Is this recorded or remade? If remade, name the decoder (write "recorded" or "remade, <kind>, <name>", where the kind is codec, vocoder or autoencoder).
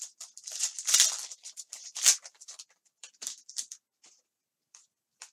remade, vocoder, BigVGAN v2